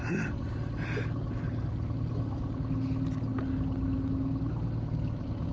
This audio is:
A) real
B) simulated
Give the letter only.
A